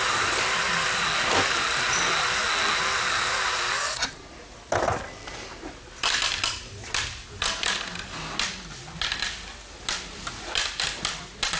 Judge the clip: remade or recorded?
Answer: recorded